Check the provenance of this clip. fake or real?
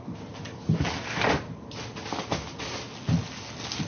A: real